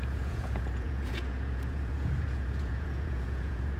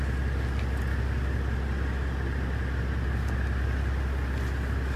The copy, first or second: first